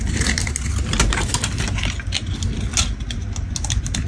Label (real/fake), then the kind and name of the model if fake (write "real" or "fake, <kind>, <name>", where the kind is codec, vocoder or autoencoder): real